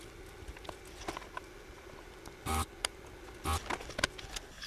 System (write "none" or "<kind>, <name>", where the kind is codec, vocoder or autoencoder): none